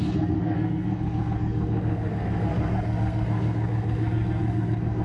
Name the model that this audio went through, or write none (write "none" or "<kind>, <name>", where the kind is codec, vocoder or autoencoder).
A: codec, SNAC